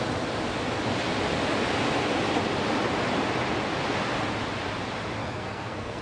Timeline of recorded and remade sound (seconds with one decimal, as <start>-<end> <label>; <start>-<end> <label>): 0.0-5.2 recorded; 5.2-6.0 remade